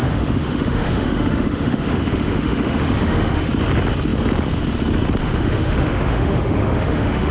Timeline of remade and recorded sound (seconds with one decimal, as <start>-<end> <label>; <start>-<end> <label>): 0.0-3.5 remade; 3.5-5.2 recorded; 5.2-7.3 remade